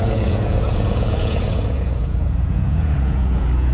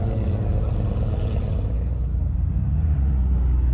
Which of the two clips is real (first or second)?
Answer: second